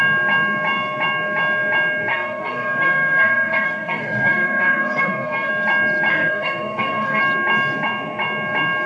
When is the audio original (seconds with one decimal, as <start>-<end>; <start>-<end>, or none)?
0.0-2.1; 5.5-6.1; 7.2-8.9